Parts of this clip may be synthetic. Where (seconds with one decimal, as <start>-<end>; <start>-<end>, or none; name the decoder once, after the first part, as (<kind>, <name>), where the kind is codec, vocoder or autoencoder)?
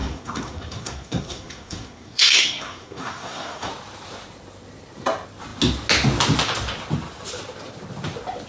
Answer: 0.0-3.7 (codec, SNAC)